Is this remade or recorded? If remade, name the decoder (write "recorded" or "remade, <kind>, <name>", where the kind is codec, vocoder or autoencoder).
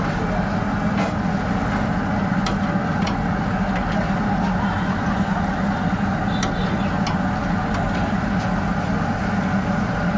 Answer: recorded